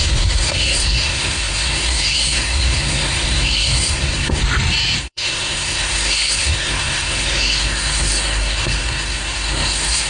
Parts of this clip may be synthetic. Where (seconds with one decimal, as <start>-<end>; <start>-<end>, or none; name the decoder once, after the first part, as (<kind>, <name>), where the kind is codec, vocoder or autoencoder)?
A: 0.0-4.4 (codec, SNAC); 5.0-10.1